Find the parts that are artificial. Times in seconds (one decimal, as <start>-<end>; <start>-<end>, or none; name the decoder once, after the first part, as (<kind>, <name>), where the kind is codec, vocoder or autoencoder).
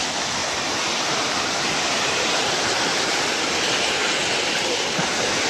0.4-2.5 (vocoder, BigVGAN v2)